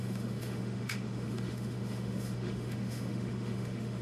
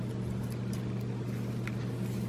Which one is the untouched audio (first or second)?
second